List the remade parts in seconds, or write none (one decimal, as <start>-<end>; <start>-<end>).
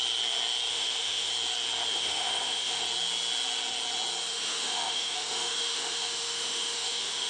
0.7-1.3; 1.9-2.8; 4.3-7.3